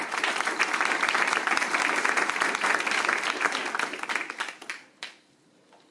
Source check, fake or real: real